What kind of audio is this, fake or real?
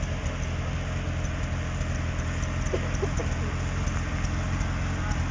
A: real